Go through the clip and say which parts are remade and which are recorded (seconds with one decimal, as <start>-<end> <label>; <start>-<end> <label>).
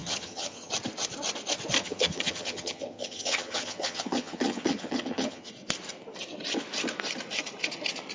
0.0-0.7 remade; 0.7-1.8 recorded; 1.8-5.5 remade; 5.5-8.1 recorded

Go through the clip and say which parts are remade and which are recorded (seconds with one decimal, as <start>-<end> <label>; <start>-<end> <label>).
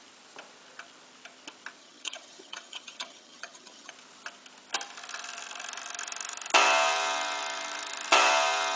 0.0-1.8 recorded; 1.8-3.9 remade; 3.9-8.8 recorded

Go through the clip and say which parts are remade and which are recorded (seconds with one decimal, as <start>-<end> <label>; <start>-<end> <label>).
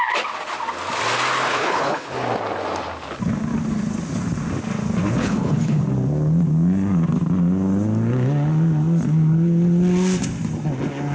0.0-1.5 recorded; 1.5-2.1 remade; 2.1-5.2 recorded; 5.2-5.8 remade; 5.8-11.1 recorded